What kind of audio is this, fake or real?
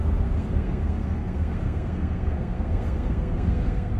fake